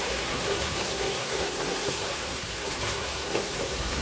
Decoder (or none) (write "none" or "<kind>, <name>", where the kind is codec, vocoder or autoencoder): codec, SNAC